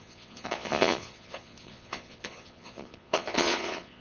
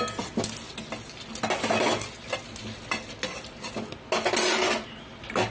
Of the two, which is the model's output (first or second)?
first